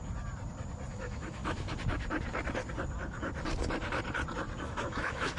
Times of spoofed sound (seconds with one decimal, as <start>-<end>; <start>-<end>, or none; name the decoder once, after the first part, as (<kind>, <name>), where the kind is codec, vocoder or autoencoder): 0.9-1.4 (autoencoder, DAC-VAE); 4.6-5.4

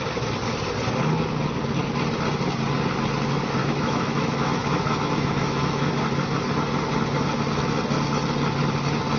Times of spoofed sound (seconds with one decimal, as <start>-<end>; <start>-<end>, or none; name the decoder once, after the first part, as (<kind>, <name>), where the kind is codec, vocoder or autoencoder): 3.6-5.9 (autoencoder, DAC-VAE)

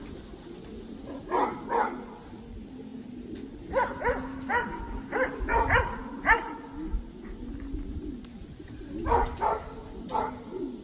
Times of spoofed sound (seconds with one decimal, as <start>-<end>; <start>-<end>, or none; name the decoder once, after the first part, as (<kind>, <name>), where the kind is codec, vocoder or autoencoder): none

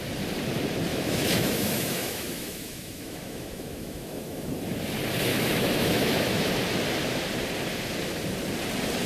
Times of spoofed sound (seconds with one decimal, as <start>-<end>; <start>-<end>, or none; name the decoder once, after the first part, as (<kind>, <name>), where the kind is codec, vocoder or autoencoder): 0.9-4.5 (autoencoder, DAC-VAE); 5.3-6.5

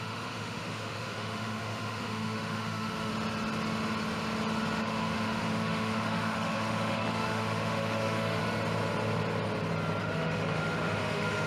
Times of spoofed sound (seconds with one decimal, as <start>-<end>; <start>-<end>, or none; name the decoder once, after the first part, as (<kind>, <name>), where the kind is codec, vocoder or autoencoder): 0.0-3.1 (autoencoder, DAC-VAE); 4.8-8.4; 10.0-11.5